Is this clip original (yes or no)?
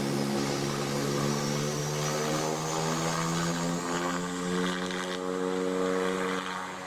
yes